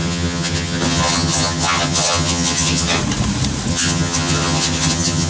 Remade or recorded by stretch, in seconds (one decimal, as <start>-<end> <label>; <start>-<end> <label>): 0.0-3.0 remade; 3.0-3.7 recorded; 3.7-5.3 remade